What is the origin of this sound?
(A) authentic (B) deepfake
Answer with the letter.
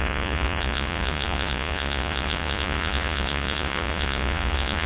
B